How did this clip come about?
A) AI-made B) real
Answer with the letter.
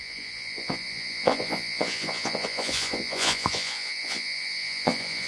A